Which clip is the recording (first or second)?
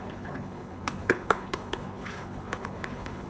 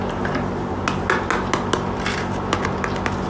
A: second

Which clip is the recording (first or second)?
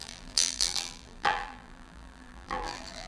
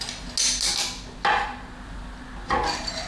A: second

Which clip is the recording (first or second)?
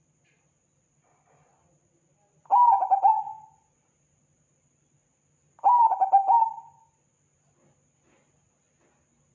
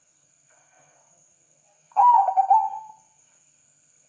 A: first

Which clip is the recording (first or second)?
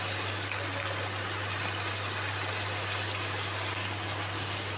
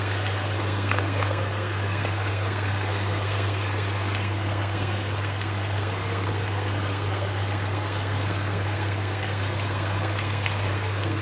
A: first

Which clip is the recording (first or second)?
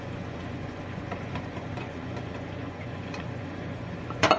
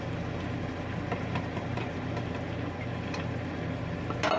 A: second